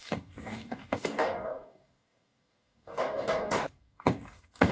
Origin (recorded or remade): remade